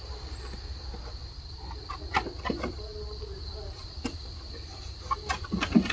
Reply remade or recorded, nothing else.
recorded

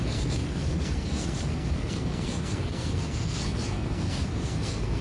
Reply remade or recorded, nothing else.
remade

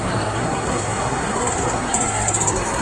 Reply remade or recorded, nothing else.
remade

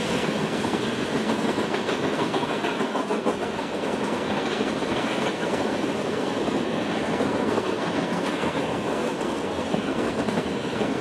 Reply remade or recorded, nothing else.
remade